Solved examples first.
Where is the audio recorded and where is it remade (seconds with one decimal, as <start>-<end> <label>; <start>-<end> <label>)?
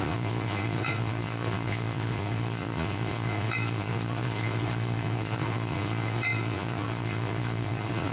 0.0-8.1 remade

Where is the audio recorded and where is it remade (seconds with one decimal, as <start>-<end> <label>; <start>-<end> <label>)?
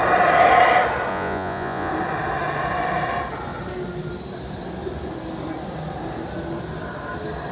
0.0-1.1 recorded; 1.1-1.9 remade; 1.9-7.5 recorded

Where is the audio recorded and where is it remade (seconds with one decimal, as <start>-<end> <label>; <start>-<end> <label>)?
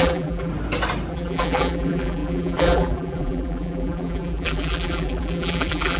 0.0-0.5 remade; 0.5-1.1 recorded; 1.1-6.0 remade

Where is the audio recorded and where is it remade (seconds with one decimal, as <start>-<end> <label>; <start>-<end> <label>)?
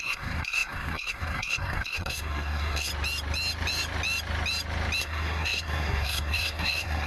0.0-2.9 remade; 2.9-5.0 recorded; 5.0-7.1 remade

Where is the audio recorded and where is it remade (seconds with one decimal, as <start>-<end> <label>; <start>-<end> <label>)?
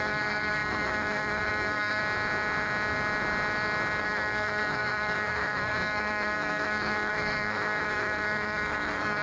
0.0-2.0 remade; 2.0-4.0 recorded; 4.0-9.2 remade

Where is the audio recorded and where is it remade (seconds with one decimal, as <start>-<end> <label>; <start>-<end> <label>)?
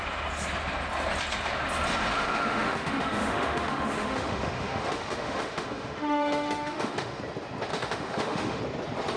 0.0-2.1 recorded; 2.1-7.2 remade; 7.2-7.7 recorded; 7.7-8.6 remade; 8.6-9.2 recorded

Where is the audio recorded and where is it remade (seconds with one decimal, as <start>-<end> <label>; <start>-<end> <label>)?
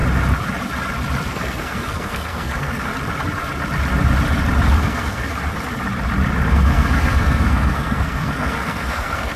0.0-1.3 recorded; 1.3-2.9 remade; 2.9-4.7 recorded; 4.7-5.3 remade; 5.3-6.5 recorded; 6.5-9.4 remade